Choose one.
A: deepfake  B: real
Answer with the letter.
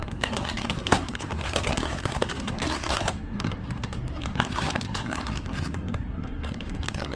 A